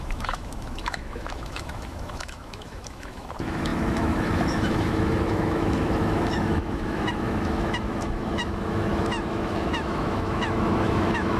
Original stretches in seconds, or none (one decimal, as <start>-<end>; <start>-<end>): none